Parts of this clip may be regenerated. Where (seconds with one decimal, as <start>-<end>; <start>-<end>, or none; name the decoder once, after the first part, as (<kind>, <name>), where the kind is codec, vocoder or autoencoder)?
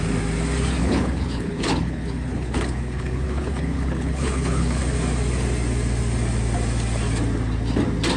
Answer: 0.8-4.8 (codec, HILCodec)